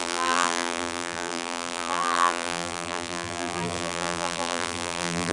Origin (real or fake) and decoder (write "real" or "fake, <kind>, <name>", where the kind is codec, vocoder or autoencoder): fake, vocoder, BigVGAN v2